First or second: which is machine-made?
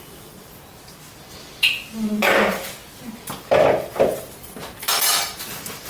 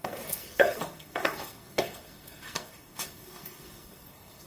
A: second